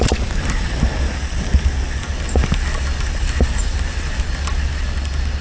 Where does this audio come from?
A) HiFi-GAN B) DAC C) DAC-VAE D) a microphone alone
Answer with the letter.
D